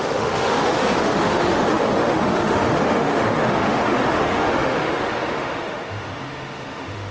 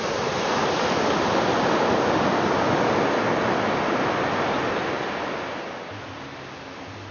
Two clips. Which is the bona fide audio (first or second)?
second